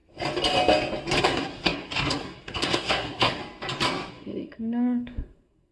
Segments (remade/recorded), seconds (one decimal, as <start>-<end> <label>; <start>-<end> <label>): 0.0-1.2 recorded; 1.2-3.4 remade; 3.4-4.1 recorded; 4.1-5.7 remade